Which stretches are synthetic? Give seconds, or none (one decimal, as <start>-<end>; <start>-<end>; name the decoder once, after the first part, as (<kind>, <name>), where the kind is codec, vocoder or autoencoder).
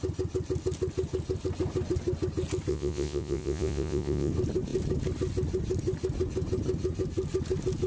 2.7-4.3 (vocoder, Vocos)